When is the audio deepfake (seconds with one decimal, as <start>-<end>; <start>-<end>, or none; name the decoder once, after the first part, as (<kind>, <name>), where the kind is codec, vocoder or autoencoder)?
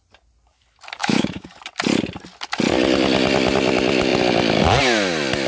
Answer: 1.0-1.5 (autoencoder, DAC-VAE)